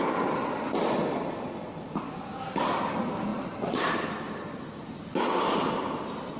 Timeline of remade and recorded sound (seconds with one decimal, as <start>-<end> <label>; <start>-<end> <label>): 0.0-3.3 recorded; 3.3-4.0 remade; 4.0-6.4 recorded